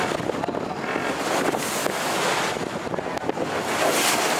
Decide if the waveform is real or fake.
real